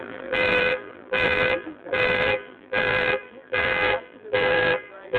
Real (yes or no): no